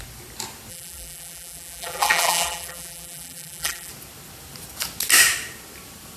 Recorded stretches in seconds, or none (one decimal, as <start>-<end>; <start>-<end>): 0.0-0.7; 3.9-6.2